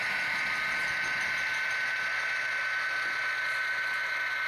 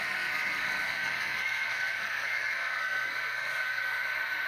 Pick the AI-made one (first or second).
second